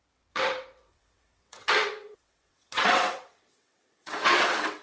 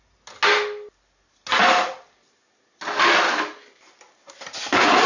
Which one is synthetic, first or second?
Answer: first